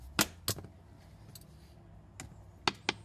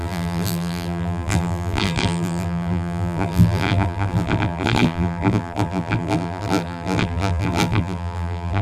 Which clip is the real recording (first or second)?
first